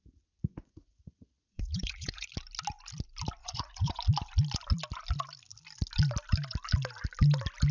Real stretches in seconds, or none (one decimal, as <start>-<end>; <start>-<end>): 0.0-0.5; 2.3-3.4; 4.0-7.7